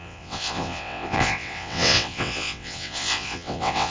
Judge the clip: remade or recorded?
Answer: remade